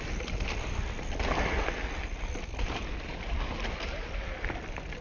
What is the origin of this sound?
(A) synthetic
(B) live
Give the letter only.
B